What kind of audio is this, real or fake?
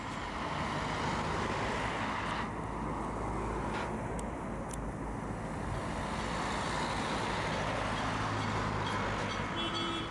real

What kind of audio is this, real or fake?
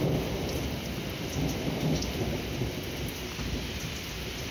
real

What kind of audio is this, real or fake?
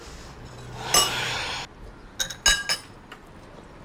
real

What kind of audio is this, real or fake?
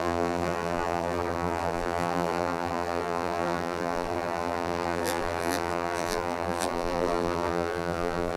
fake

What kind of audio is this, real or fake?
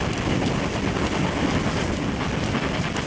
real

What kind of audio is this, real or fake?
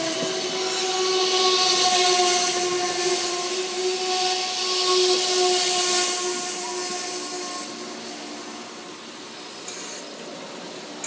real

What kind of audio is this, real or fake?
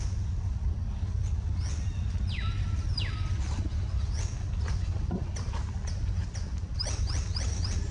real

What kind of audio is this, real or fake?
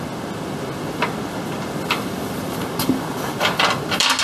real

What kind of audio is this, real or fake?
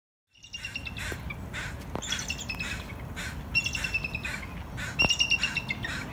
real